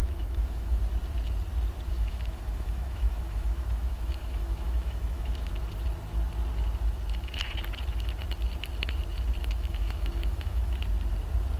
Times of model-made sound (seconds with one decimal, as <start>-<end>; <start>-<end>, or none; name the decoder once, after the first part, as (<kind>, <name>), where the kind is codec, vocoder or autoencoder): 0.0-0.8 (autoencoder, DAC-VAE); 1.9-5.6; 9.4-10.8